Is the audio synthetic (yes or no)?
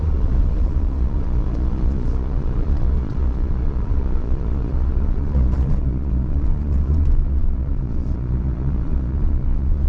yes